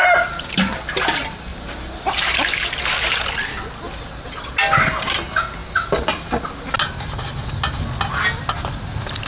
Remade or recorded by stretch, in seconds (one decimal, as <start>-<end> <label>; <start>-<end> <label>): 0.0-1.5 recorded; 1.5-2.8 remade; 2.8-9.3 recorded

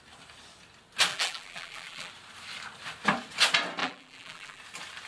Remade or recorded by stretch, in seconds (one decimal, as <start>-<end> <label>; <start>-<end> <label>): 0.0-1.1 recorded; 1.1-2.1 remade; 2.1-3.8 recorded; 3.8-4.6 remade; 4.6-5.1 recorded

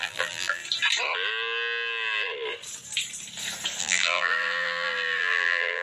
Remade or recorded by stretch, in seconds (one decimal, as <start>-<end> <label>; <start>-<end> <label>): 0.0-0.6 remade; 0.6-3.8 recorded; 3.8-5.8 remade

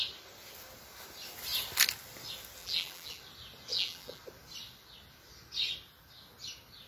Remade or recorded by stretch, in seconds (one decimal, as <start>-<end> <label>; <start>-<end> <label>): 0.0-2.6 recorded; 2.6-3.2 remade; 3.2-3.7 recorded; 3.7-4.2 remade; 4.2-6.9 recorded

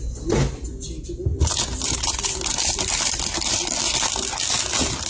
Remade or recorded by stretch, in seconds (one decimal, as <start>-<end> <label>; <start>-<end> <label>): 0.0-1.3 recorded; 1.3-2.3 remade; 2.3-5.1 recorded

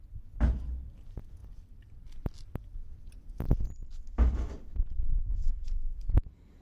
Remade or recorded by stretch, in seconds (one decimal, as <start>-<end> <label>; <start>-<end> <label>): 0.0-6.6 recorded

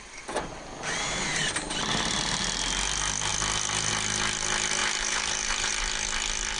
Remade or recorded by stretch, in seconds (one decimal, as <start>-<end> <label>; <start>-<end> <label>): 0.0-1.3 recorded; 1.3-2.2 remade; 2.2-4.8 recorded; 4.8-5.7 remade; 5.7-6.6 recorded

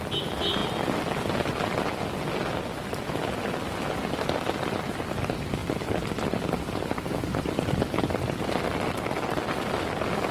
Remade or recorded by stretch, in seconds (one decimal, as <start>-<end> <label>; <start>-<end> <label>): 0.0-10.3 recorded